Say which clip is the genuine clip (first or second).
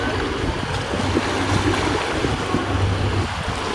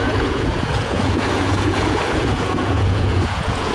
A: first